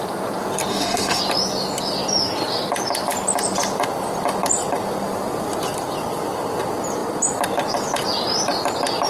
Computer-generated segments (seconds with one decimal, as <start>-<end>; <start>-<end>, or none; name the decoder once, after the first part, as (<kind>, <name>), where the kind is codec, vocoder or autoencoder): 0.7-1.2 (codec, DAC)